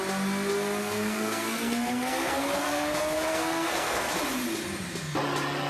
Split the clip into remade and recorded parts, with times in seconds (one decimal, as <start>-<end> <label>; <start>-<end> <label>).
0.0-0.8 recorded; 0.8-4.2 remade; 4.2-5.7 recorded